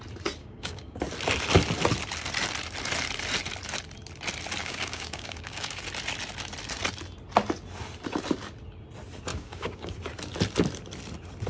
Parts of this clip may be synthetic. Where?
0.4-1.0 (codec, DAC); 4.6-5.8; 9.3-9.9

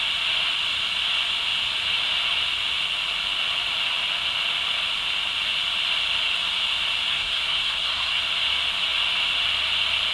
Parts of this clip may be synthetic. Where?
7.1-8.2 (codec, SNAC)

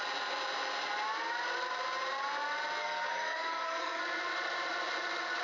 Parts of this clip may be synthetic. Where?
2.8-4.0 (codec, SNAC)